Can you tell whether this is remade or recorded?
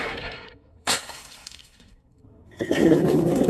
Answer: remade